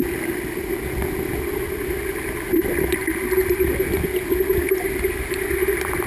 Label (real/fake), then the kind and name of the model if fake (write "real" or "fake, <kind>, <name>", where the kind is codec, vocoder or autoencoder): real